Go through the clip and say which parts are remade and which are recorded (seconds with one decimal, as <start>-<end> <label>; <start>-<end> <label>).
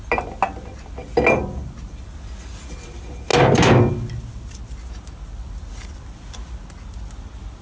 0.0-7.6 recorded